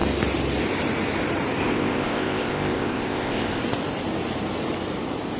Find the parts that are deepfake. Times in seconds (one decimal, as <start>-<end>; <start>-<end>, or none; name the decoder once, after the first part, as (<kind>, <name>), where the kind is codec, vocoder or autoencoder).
1.6-3.6 (codec, ZipCodec)

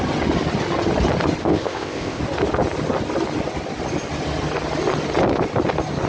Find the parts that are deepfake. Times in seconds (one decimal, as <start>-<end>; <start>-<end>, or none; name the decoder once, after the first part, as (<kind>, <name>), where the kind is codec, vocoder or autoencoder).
1.4-2.2 (codec, ZipCodec)

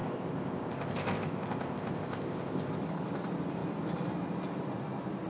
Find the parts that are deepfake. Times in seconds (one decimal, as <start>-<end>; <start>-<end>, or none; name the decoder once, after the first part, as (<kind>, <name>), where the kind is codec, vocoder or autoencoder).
0.0-2.8 (codec, ZipCodec)

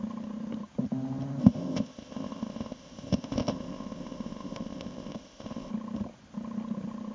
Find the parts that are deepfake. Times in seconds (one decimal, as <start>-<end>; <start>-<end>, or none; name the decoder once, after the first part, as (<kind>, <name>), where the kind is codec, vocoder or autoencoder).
1.4-5.7 (codec, ZipCodec)

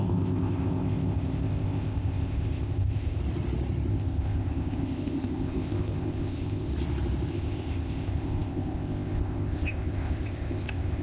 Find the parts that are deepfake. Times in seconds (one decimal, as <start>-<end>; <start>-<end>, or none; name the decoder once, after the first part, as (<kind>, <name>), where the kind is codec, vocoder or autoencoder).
0.0-3.2 (codec, ZipCodec); 3.9-6.7; 7.3-11.0